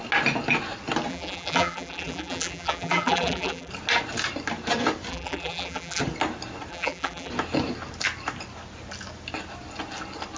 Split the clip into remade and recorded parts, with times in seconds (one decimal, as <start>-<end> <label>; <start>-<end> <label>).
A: 0.0-1.1 recorded; 1.1-3.7 remade; 3.7-5.1 recorded; 5.1-6.0 remade; 6.0-6.7 recorded; 6.7-7.3 remade; 7.3-10.4 recorded